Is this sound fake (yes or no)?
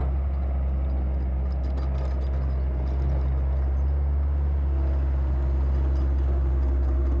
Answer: no